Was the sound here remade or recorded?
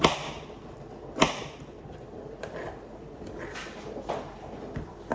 remade